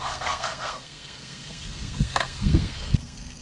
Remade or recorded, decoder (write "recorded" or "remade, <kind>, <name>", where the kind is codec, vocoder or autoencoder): remade, codec, SNAC